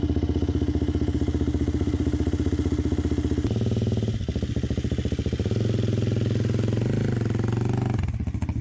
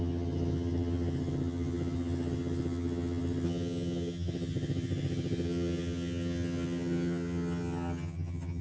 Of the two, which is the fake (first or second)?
second